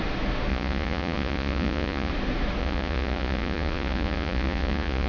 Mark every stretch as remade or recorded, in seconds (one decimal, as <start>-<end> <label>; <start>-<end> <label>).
0.0-0.5 recorded; 0.5-2.1 remade; 2.1-2.6 recorded; 2.6-5.1 remade